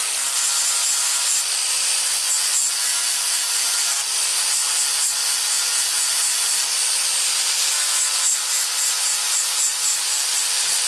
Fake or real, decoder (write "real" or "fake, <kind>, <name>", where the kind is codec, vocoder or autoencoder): real